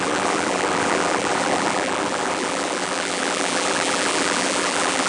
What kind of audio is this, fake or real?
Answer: fake